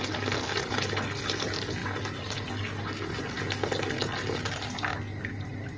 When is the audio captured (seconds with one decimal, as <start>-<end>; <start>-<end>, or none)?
0.0-5.8